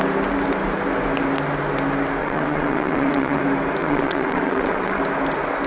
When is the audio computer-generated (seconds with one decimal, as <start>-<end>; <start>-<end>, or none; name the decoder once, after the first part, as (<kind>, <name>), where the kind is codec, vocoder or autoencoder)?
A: 2.2-3.4 (vocoder, WaveNeXt); 3.8-5.0

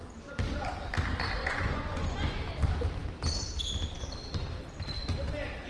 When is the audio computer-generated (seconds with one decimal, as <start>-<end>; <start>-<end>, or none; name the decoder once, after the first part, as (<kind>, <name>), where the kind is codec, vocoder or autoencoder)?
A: 1.4-2.4 (vocoder, Vocos)

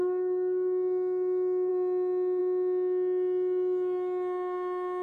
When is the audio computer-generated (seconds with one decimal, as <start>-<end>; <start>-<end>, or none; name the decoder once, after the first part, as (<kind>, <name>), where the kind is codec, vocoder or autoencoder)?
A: none